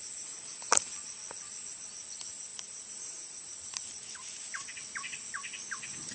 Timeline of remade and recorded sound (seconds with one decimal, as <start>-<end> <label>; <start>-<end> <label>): 0.0-2.5 recorded; 2.5-4.4 remade; 4.4-6.1 recorded